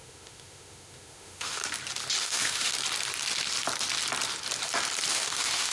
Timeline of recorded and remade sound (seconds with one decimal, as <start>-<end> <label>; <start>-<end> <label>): 0.0-1.6 remade; 1.6-2.2 recorded; 2.2-2.7 remade; 2.7-5.1 recorded; 5.1-5.7 remade